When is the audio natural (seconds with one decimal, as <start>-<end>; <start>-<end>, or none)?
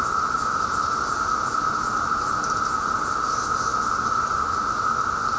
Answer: 0.0-5.4